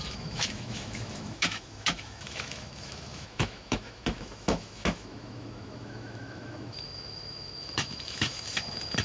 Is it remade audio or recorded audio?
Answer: remade